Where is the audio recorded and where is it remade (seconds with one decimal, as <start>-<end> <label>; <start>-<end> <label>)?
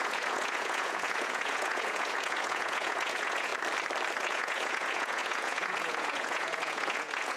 0.0-3.5 remade; 3.5-4.2 recorded; 4.2-7.4 remade